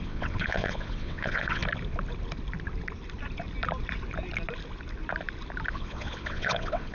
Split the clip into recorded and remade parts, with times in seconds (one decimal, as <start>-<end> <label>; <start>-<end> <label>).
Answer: 0.0-1.6 remade; 1.6-5.7 recorded; 5.7-6.9 remade